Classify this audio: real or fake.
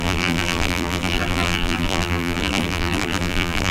fake